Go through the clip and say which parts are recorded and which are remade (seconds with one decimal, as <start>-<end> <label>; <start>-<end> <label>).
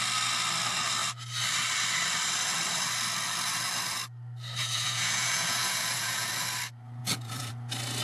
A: 0.0-4.6 recorded; 4.6-6.3 remade; 6.3-7.0 recorded; 7.0-7.5 remade; 7.5-8.0 recorded